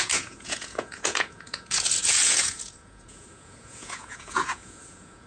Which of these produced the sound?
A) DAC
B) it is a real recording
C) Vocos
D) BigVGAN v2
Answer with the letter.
C